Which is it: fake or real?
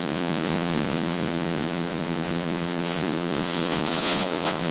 fake